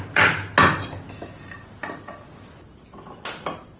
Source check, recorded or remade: recorded